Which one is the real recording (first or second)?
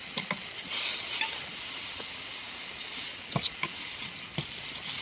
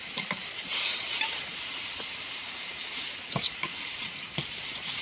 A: first